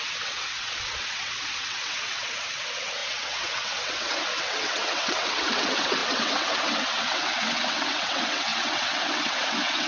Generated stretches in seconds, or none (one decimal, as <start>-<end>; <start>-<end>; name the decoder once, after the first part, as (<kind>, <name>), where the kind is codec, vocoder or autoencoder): 0.0-9.9 (vocoder, WaveNeXt)